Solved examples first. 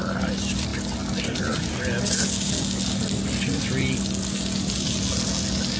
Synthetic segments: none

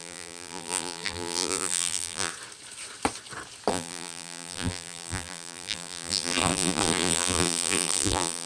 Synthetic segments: 0.0-2.3 (vocoder, BigVGAN v2); 3.7-8.5

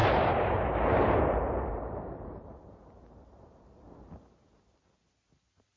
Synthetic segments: 0.0-1.2 (vocoder, BigVGAN v2); 1.7-4.0

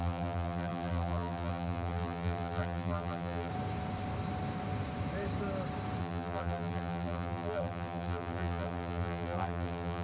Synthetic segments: 0.0-3.5 (vocoder, BigVGAN v2); 6.0-10.0